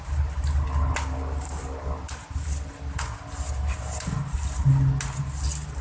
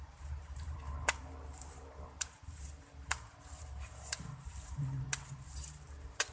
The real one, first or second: first